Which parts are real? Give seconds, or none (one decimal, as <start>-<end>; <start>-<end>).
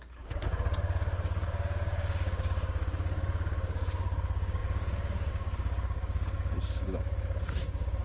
none